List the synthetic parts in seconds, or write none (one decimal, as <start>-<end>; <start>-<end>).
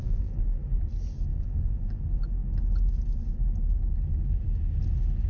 0.0-0.6; 1.3-2.0